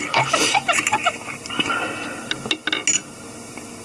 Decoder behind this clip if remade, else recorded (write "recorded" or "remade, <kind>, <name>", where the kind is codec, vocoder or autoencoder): recorded